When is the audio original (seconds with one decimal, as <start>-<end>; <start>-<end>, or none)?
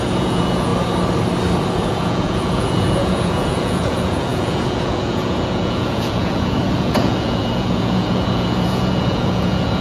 0.7-1.7